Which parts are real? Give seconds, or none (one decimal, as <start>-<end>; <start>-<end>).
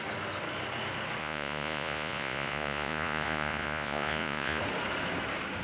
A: 0.0-1.2; 4.6-5.6